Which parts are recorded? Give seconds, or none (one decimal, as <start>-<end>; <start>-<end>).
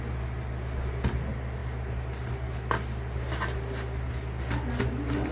0.0-5.3